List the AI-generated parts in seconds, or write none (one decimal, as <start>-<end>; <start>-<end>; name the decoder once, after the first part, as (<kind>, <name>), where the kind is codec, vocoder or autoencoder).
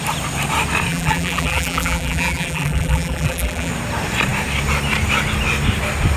0.9-3.7 (vocoder, BigVGAN v2)